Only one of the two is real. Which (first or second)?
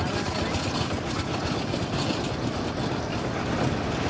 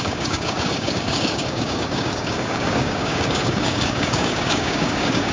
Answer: first